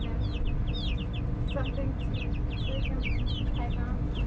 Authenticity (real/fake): real